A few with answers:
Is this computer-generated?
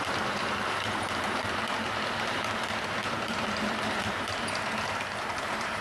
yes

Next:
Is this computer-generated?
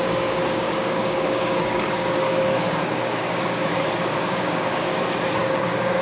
yes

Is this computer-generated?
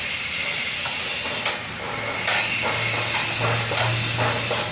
no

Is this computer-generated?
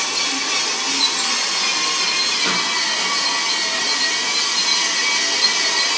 no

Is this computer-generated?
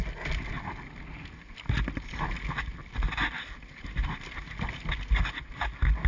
no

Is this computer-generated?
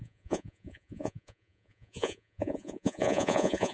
yes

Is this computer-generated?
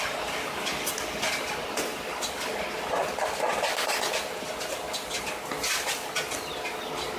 no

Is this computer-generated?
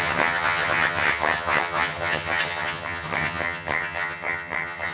yes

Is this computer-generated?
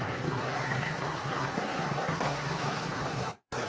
yes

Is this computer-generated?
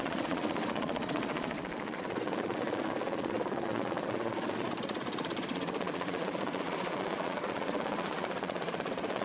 yes